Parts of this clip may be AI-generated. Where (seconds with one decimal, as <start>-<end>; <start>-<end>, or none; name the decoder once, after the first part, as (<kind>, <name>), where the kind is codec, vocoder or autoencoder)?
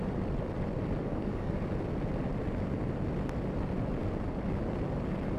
1.0-1.7 (codec, DAC)